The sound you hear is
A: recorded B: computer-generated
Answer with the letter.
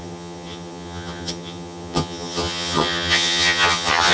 B